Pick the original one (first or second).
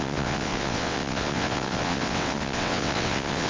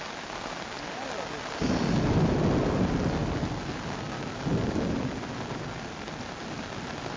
second